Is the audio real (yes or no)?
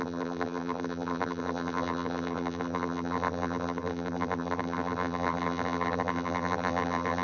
no